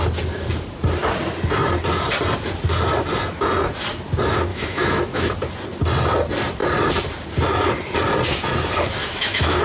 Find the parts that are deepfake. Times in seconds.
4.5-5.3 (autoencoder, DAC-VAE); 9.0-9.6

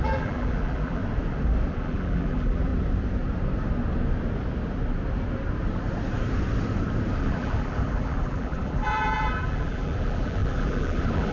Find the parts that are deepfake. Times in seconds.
0.0-1.0 (vocoder, BigVGAN v2); 1.7-2.7; 7.2-11.3

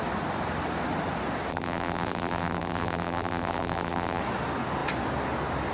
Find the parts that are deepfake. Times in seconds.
1.5-4.2 (vocoder, BigVGAN v2)

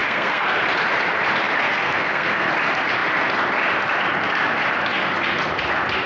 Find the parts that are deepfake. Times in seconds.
0.0-0.6 (codec, SNAC); 1.6-2.5

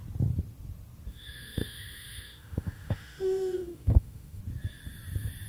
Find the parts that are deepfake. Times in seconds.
1.1-4.4 (autoencoder, DAC-VAE)